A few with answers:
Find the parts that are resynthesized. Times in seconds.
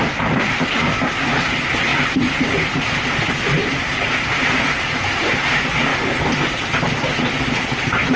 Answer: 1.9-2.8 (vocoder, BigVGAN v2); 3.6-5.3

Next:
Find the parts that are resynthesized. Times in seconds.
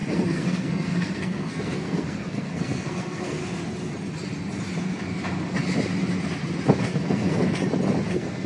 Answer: 0.0-3.4 (codec, SNAC); 6.8-7.6; 8.1-8.5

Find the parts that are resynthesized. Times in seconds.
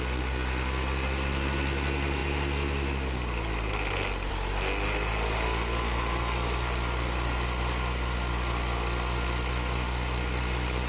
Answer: none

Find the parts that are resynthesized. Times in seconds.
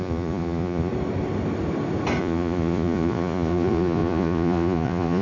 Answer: 0.0-0.9 (vocoder, Vocos); 2.2-5.2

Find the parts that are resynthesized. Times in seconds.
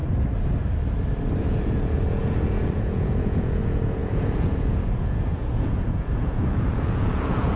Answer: 1.4-7.6 (vocoder, Vocos)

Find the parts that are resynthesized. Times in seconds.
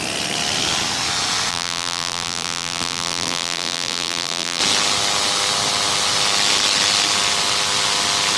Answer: 1.5-4.6 (vocoder, BigVGAN v2)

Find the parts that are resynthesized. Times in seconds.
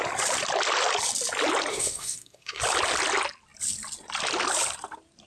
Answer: 1.7-2.6 (codec, SNAC)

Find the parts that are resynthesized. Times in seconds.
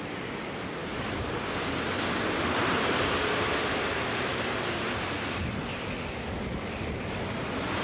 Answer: 0.8-3.8 (vocoder, BigVGAN v2); 5.4-6.2